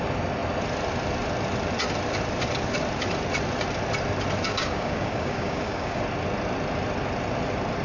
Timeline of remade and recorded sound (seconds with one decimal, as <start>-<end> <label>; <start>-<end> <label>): 0.0-4.5 recorded; 4.5-6.0 remade; 6.0-7.8 recorded